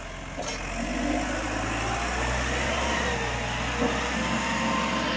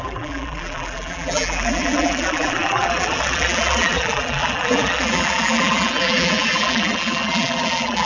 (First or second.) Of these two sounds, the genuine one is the first